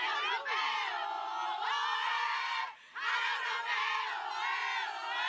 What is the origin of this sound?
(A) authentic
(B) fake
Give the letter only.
A